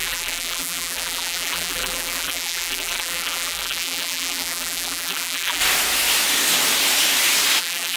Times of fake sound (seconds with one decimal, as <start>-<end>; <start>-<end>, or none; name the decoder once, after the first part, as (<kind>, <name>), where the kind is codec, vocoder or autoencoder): 0.0-5.6 (vocoder, BigVGAN v2); 7.6-8.0